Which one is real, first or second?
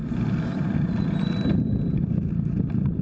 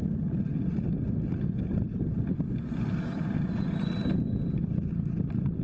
first